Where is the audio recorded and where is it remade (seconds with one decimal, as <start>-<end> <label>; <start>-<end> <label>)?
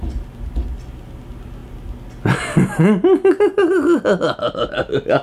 0.0-5.2 recorded